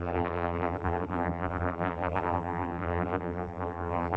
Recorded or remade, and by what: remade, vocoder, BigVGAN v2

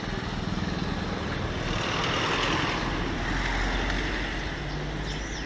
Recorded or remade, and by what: recorded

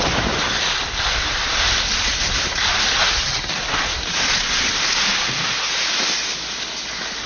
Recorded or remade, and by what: recorded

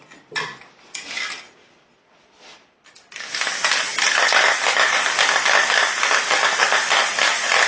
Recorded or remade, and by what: recorded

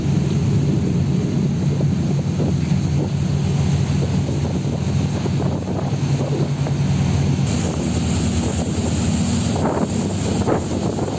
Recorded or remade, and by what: recorded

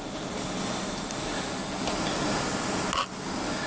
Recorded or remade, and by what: recorded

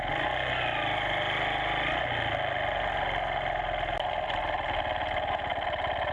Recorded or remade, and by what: recorded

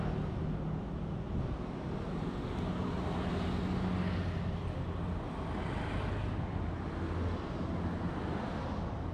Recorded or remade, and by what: recorded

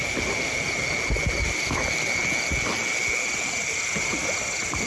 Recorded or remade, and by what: recorded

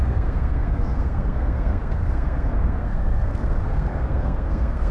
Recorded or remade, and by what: remade, codec, SNAC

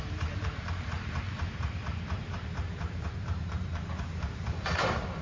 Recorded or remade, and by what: remade, vocoder, BigVGAN v2